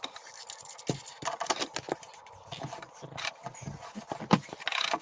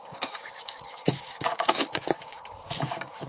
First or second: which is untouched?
first